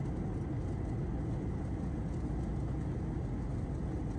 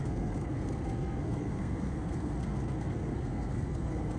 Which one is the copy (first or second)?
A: second